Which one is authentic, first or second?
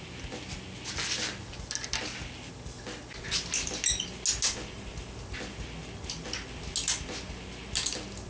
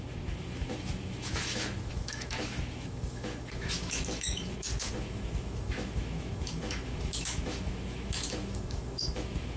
first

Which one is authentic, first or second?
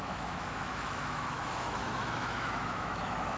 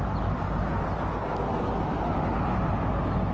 second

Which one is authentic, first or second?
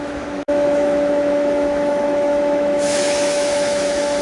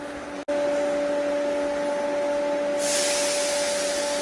second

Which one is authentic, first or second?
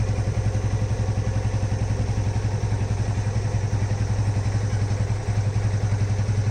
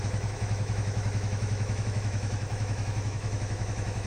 first